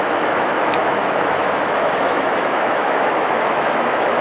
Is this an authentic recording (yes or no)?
no